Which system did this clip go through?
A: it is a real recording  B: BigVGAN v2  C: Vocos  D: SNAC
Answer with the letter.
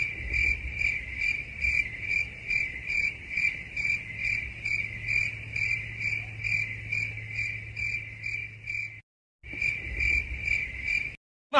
A